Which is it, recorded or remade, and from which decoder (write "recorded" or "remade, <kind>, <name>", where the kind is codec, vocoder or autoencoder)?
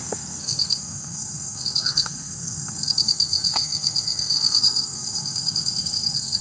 remade, codec, SNAC